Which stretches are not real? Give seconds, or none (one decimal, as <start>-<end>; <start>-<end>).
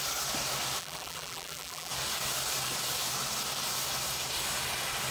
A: 0.8-1.9